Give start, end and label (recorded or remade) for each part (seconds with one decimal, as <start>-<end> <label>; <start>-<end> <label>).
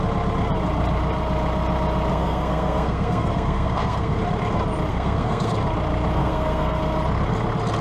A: 0.0-2.1 recorded; 2.1-4.2 remade; 4.2-4.9 recorded; 4.9-5.5 remade; 5.5-6.2 recorded; 6.2-6.8 remade; 6.8-7.8 recorded